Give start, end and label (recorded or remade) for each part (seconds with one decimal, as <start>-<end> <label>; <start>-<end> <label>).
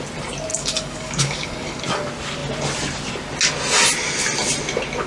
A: 0.0-0.5 recorded; 0.5-1.8 remade; 1.8-5.1 recorded